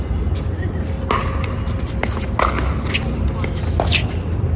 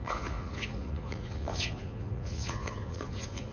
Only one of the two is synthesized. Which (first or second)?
second